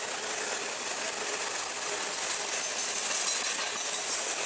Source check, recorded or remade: recorded